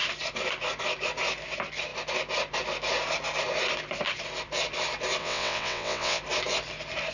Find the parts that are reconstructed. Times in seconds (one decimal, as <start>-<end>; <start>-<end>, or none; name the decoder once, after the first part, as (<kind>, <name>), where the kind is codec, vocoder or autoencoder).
5.2-6.2 (vocoder, WaveNeXt)